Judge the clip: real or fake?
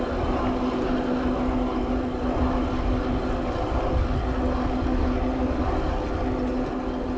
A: real